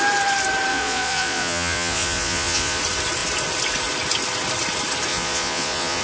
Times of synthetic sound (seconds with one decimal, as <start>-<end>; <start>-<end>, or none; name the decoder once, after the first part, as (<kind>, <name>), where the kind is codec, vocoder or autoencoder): 0.7-2.8 (vocoder, Vocos); 5.1-6.0